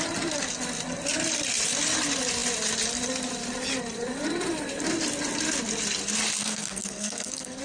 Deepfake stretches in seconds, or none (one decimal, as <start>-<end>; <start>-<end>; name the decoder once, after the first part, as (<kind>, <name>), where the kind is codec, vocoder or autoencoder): 6.4-7.6 (codec, SNAC)